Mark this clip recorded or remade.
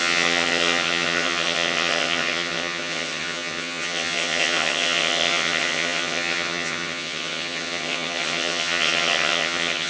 remade